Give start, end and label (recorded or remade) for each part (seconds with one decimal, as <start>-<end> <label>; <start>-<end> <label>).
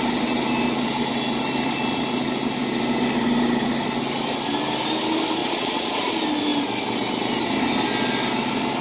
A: 0.0-5.4 recorded; 5.4-6.1 remade; 6.1-8.8 recorded